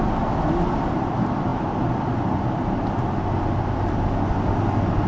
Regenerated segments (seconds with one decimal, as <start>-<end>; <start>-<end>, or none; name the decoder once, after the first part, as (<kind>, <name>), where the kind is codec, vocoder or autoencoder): none